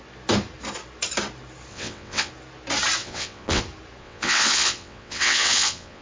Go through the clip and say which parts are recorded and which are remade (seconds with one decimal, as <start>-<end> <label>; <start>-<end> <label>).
0.0-1.7 recorded; 1.7-2.3 remade; 2.3-3.0 recorded; 3.0-3.6 remade; 3.6-4.0 recorded; 4.0-6.0 remade